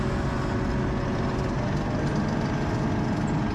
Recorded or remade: recorded